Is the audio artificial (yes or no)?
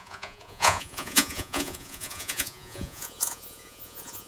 yes